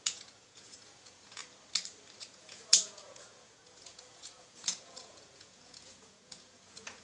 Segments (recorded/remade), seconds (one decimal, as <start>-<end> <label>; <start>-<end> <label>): 0.0-1.4 remade; 1.4-2.2 recorded; 2.2-7.0 remade